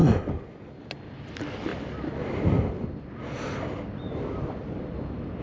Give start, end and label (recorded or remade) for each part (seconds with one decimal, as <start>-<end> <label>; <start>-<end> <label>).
0.0-1.7 recorded; 1.7-4.9 remade; 4.9-5.4 recorded